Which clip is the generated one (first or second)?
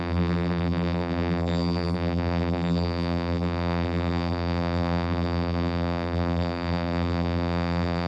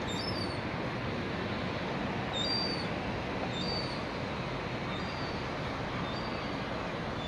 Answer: first